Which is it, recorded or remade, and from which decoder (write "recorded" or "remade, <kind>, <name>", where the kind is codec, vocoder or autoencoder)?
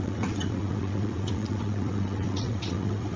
remade, vocoder, WaveNeXt